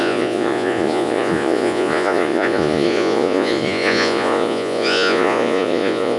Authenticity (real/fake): fake